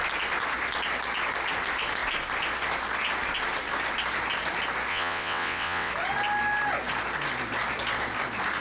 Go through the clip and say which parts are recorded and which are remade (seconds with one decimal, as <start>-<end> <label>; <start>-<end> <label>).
0.0-4.9 recorded; 4.9-5.9 remade; 5.9-8.6 recorded